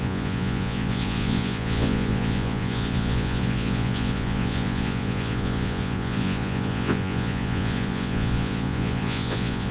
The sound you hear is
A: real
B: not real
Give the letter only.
B